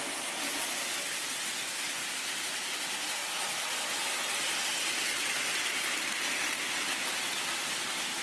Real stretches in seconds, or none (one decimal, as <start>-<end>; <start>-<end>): 0.0-8.2